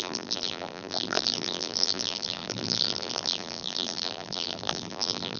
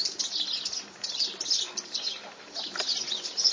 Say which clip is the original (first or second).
second